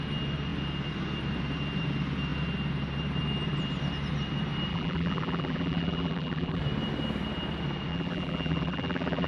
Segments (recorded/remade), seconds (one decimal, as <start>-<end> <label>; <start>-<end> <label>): 0.0-4.7 recorded; 4.7-6.6 remade; 6.6-7.9 recorded; 7.9-9.3 remade